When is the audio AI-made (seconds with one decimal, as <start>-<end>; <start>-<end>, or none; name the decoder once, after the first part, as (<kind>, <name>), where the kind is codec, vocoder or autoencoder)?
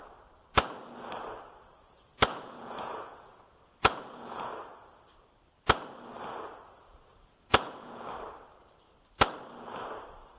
2.3-4.5 (vocoder, Vocos); 7.1-8.1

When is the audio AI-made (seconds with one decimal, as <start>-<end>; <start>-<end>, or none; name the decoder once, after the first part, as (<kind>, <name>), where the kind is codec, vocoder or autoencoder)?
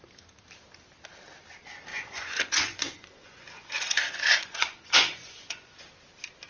1.9-5.8 (vocoder, Vocos)